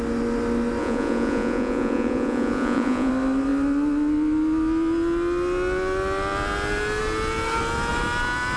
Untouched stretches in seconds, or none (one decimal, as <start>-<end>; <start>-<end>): 0.0-0.8; 3.1-8.6